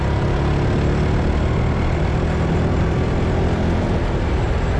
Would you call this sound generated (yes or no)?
no